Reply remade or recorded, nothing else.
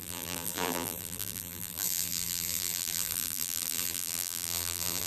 remade